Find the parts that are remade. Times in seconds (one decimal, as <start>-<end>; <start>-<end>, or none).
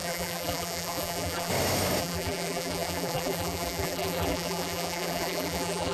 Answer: 0.0-1.5; 2.0-5.9